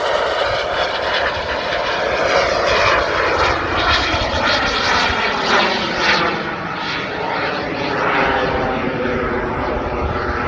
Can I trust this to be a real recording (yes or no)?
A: yes